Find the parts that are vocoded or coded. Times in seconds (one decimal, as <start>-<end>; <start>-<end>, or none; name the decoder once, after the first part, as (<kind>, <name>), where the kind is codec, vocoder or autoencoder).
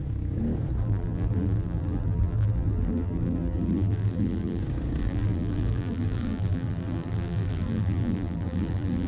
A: 0.8-4.6 (vocoder, BigVGAN v2); 5.0-9.1